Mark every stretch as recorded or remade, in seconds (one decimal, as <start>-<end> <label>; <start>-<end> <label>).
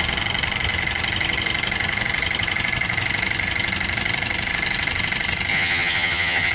0.0-5.5 recorded; 5.5-6.5 remade